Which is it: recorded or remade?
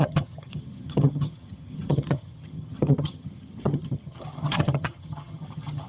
remade